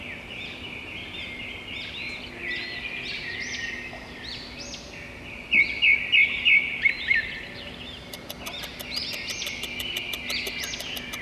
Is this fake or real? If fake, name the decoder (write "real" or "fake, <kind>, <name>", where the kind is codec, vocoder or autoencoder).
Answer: real